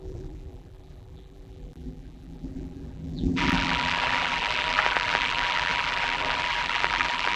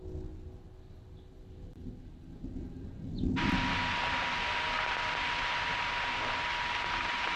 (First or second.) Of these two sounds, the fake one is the first